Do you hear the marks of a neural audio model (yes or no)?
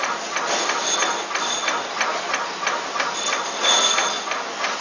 no